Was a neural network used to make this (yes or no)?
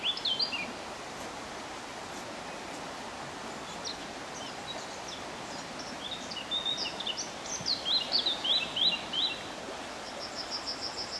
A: no